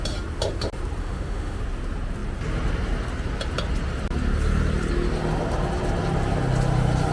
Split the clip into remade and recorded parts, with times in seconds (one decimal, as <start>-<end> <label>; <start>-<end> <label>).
0.0-1.0 recorded; 1.0-1.6 remade; 1.6-7.1 recorded